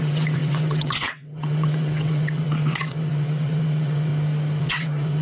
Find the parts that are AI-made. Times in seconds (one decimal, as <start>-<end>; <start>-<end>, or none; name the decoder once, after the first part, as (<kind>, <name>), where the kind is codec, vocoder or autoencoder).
0.0-4.1 (vocoder, WaveNeXt); 4.6-5.2